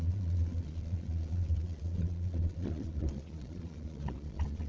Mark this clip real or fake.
fake